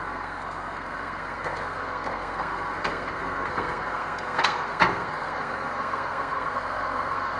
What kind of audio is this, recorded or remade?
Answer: remade